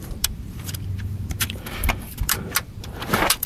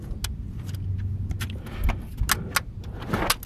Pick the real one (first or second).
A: second